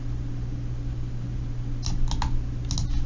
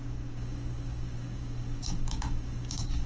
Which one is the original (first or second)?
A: first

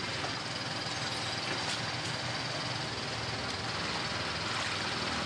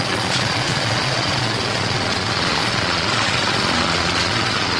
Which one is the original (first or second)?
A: first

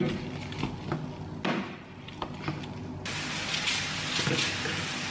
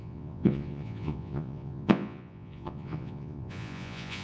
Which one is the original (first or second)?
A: first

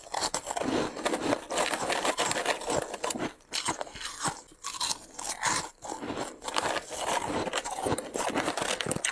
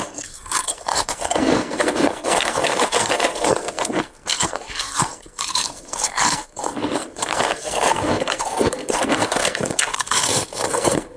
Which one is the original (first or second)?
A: first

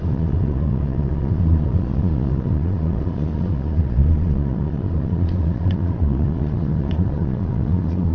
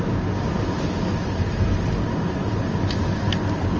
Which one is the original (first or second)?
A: second